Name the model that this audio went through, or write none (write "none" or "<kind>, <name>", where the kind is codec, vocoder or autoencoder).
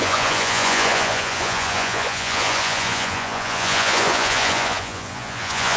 vocoder, Vocos